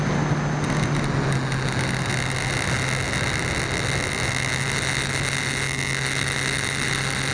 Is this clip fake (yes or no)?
no